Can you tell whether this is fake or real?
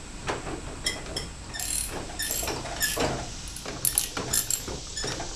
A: real